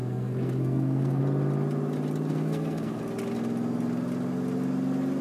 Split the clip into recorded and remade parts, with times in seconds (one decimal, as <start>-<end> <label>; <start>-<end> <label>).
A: 0.0-1.2 remade; 1.2-2.3 recorded; 2.3-3.0 remade; 3.0-5.2 recorded